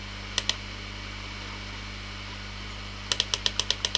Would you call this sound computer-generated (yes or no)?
no